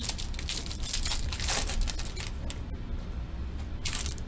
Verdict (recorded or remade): recorded